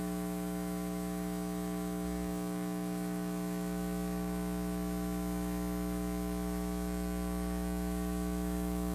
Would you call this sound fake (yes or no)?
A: yes